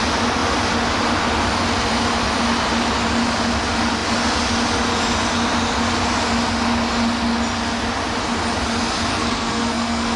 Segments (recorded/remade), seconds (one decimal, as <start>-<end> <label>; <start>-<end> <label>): 0.0-9.1 recorded; 9.1-10.2 remade